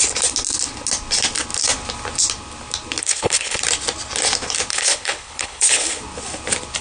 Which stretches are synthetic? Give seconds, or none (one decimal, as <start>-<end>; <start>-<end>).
3.0-3.6; 4.7-6.0